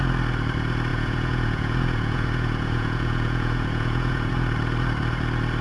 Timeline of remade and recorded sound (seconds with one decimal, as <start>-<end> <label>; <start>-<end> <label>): 0.0-0.9 recorded; 0.9-4.3 remade; 4.3-5.6 recorded